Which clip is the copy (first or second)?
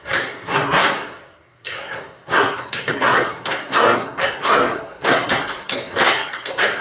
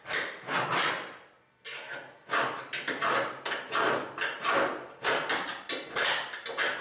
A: first